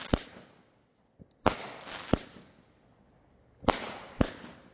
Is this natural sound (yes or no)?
yes